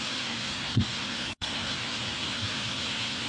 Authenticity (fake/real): fake